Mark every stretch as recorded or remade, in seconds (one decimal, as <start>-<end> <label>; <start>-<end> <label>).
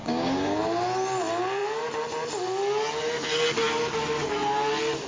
0.0-0.6 remade; 0.6-5.1 recorded